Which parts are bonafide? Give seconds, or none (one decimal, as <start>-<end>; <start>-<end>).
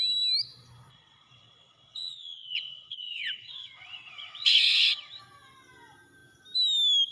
0.0-0.9; 5.2-7.1